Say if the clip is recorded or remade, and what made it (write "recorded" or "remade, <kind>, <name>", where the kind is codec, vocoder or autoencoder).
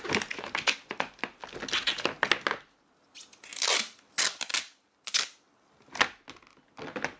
recorded